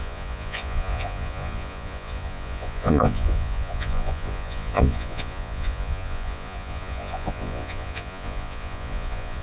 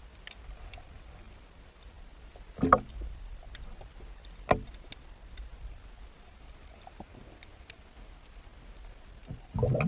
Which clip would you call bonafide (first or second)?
second